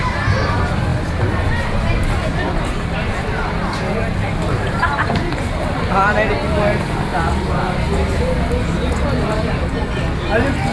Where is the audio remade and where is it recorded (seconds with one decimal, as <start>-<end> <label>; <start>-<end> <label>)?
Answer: 0.0-10.7 recorded